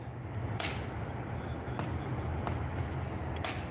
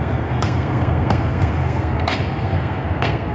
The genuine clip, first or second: first